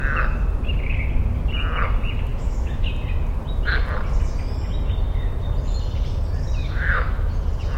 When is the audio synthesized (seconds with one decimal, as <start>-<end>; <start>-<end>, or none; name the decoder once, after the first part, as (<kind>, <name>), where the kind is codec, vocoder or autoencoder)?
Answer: 2.3-2.9 (autoencoder, DAC-VAE); 6.6-7.3